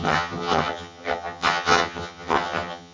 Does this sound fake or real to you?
fake